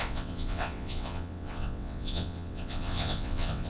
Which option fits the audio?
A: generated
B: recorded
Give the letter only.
A